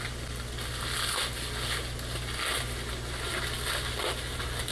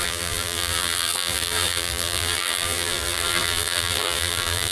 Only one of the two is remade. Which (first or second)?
second